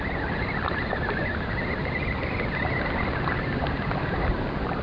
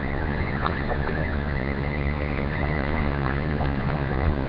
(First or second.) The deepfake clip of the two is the second